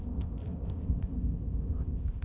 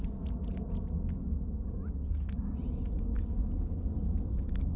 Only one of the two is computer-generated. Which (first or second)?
first